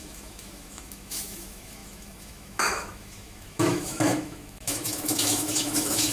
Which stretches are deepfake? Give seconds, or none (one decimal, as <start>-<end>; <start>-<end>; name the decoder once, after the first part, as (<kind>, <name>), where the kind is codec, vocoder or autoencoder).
0.0-6.1 (autoencoder, DAC-VAE)